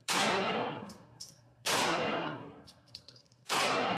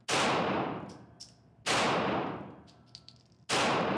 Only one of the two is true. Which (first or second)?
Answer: second